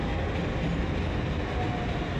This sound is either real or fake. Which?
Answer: real